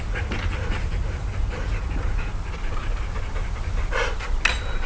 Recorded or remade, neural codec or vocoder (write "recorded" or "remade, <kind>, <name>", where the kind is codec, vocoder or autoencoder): recorded